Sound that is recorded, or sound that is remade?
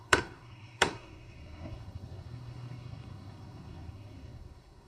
remade